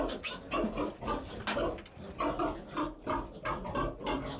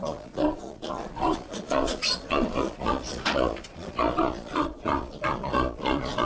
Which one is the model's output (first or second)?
second